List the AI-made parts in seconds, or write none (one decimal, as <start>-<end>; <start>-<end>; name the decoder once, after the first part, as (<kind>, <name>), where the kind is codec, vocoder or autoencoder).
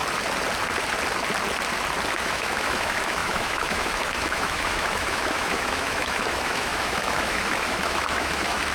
2.2-8.7 (autoencoder, DAC-VAE)